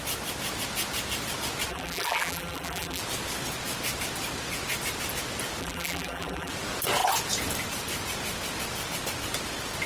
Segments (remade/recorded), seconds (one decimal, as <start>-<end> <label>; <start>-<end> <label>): 0.0-1.7 recorded; 1.7-3.0 remade; 3.0-5.6 recorded; 5.6-6.5 remade; 6.5-9.9 recorded